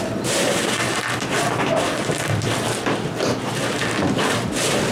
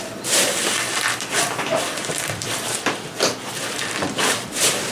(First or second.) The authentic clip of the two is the first